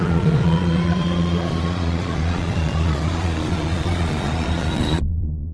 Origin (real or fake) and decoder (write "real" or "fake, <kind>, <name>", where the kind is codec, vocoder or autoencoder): fake, vocoder, Vocos